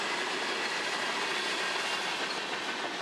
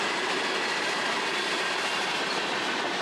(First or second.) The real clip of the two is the first